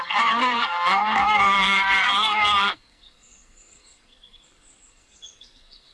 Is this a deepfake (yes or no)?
yes